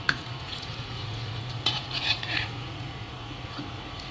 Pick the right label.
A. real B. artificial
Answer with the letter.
B